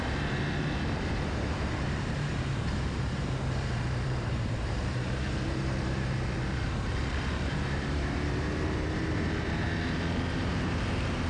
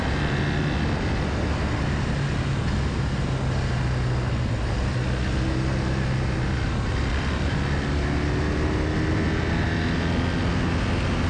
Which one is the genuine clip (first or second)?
second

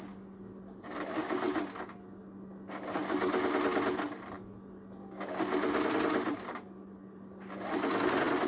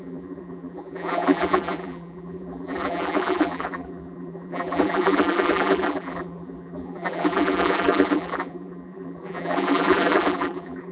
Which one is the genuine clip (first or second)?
first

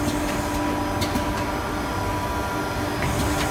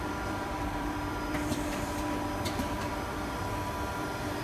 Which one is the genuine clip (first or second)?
first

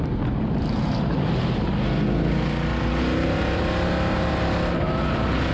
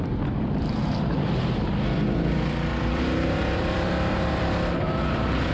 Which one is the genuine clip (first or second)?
first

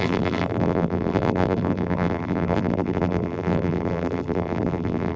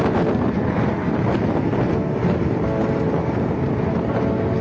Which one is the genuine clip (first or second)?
second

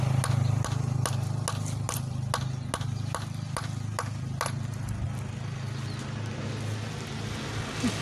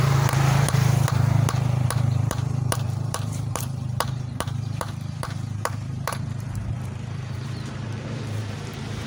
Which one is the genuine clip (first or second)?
first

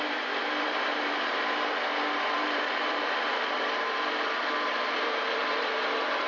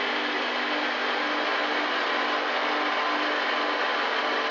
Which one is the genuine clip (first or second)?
second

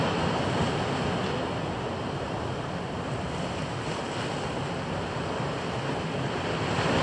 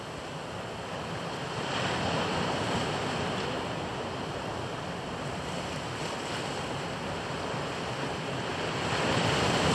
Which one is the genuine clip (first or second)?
first